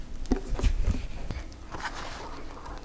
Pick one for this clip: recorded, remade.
recorded